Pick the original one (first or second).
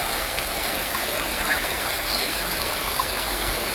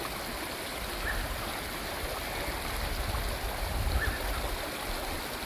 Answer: second